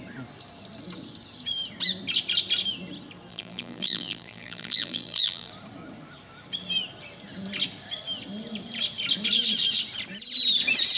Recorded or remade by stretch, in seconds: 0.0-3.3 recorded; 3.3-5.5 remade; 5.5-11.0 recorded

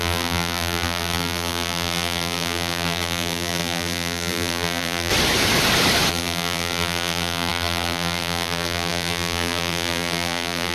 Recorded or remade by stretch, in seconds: 0.0-5.1 remade; 5.1-6.1 recorded; 6.1-10.7 remade

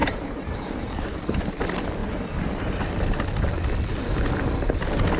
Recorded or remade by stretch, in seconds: 0.0-1.4 remade; 1.4-5.2 recorded

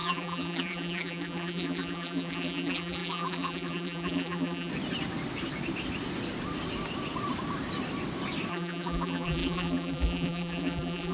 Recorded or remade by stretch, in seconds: 0.0-4.7 remade; 4.7-8.5 recorded; 8.5-11.1 remade

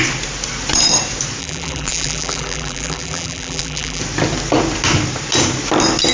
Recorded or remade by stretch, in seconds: 0.0-1.4 recorded; 1.4-4.0 remade; 4.0-6.1 recorded